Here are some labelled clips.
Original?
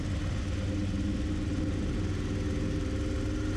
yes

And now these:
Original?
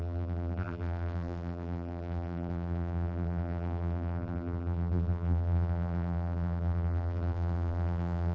no